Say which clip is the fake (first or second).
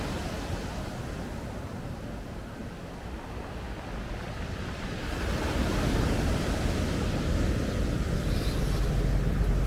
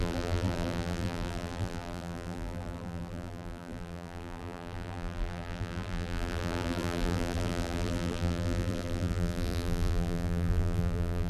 second